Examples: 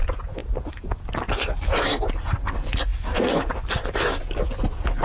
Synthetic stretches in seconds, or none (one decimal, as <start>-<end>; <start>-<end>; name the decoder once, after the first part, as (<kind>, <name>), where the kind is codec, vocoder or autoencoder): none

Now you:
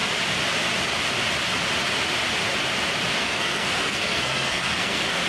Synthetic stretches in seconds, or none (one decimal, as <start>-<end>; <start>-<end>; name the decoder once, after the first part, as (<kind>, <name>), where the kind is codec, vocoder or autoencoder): 3.2-5.3 (codec, SNAC)

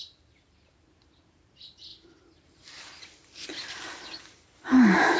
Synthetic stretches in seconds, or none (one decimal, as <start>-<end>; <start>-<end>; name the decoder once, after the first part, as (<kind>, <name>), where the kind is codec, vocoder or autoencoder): none

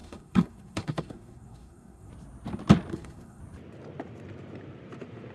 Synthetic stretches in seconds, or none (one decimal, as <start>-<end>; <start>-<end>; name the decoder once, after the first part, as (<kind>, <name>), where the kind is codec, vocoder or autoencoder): 0.0-2.1 (codec, SNAC); 2.9-3.4

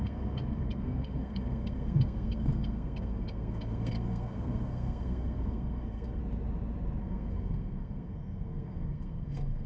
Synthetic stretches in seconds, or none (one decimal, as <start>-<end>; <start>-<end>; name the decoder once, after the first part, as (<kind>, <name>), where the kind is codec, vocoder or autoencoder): 0.0-6.2 (codec, SNAC); 7.0-9.7

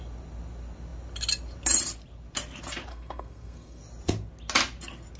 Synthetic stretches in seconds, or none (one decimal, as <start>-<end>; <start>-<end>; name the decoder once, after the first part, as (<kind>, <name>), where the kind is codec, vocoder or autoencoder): 2.9-3.8 (codec, SNAC)

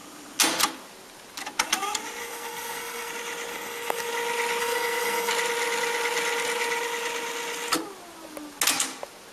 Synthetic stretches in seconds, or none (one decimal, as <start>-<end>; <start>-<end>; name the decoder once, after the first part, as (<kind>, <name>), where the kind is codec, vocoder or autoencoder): 2.2-3.1 (codec, SNAC); 3.5-4.1; 4.6-5.3

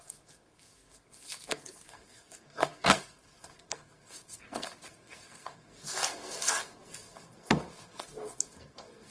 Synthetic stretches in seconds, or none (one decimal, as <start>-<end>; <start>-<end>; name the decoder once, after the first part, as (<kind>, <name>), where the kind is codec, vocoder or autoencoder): 0.0-9.1 (codec, SNAC)